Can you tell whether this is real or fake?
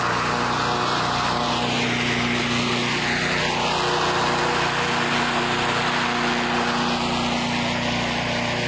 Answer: real